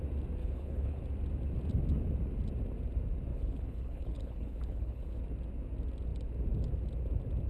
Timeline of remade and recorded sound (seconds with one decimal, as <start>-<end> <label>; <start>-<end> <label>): 0.0-0.4 recorded; 0.4-1.0 remade; 1.0-3.3 recorded; 3.3-5.2 remade; 5.2-7.5 recorded